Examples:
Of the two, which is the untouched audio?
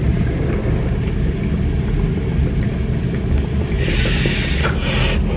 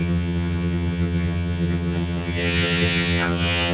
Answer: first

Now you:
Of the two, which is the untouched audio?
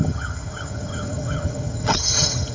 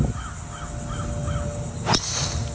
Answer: second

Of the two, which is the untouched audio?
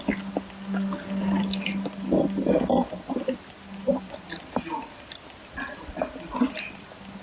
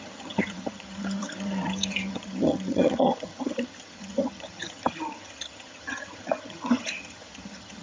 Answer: first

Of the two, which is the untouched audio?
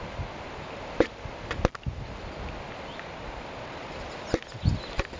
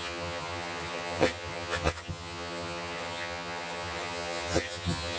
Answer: first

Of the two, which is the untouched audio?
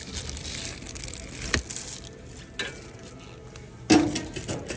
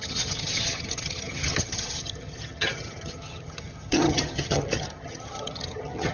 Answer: first